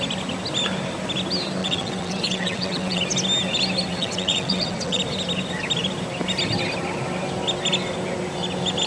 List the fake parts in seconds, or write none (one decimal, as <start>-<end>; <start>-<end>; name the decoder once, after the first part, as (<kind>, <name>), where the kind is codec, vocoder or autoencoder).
1.6-3.0 (vocoder, WaveNeXt); 3.9-5.0